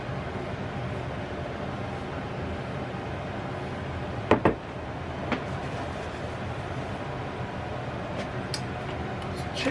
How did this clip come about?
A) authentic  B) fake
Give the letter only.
A